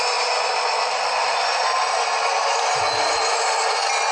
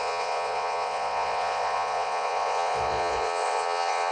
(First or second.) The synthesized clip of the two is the second